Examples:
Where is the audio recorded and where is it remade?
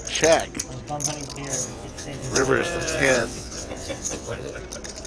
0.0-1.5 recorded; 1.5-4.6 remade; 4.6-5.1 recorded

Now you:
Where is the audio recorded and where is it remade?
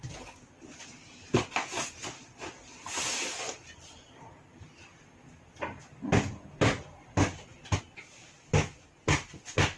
0.0-9.8 recorded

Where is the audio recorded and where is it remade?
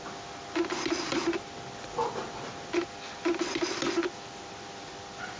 0.0-5.4 recorded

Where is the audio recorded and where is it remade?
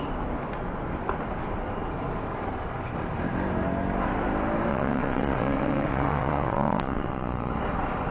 0.0-4.7 recorded; 4.7-7.5 remade; 7.5-8.1 recorded